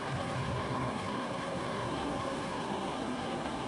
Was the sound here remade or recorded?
remade